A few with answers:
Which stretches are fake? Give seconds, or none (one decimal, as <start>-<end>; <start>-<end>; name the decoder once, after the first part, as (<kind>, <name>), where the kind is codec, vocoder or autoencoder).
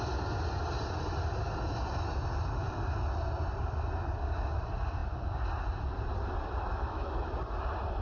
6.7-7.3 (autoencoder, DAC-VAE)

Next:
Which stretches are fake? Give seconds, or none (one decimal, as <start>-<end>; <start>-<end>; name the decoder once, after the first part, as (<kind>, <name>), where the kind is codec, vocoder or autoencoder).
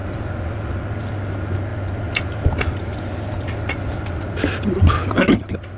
none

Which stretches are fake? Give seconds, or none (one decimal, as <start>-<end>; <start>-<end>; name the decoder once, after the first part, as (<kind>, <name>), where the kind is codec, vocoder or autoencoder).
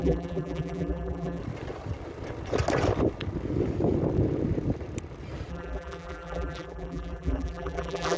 0.0-1.4 (vocoder, BigVGAN v2); 5.5-8.2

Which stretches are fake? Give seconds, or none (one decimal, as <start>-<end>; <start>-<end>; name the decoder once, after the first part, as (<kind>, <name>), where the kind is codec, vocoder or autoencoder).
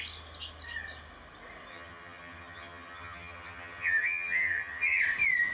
1.7-5.0 (vocoder, HiFi-GAN)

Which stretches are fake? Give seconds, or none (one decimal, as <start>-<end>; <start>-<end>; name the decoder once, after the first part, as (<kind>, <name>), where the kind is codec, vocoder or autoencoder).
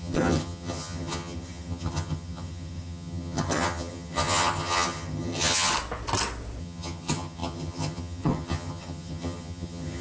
0.0-5.7 (vocoder, HiFi-GAN); 6.6-10.0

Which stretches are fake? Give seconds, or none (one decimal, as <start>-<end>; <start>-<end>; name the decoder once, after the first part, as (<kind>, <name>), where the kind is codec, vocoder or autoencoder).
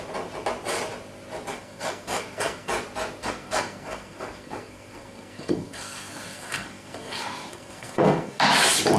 1.5-2.7 (codec, SNAC); 3.2-8.4